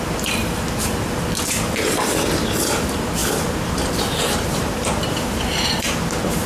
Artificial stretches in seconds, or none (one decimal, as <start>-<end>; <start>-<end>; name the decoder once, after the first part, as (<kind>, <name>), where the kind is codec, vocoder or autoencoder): 0.0-6.5 (vocoder, BigVGAN v2)